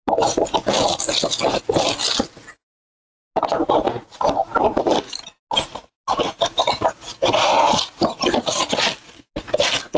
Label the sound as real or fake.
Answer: real